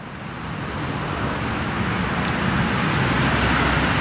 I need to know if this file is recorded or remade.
recorded